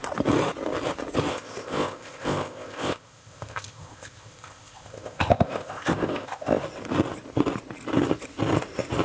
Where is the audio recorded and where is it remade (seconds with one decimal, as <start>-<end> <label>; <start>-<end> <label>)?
0.0-1.3 recorded; 1.3-6.6 remade; 6.6-9.0 recorded